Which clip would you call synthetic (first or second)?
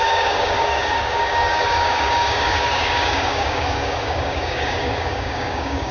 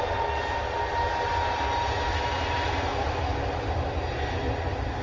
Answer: first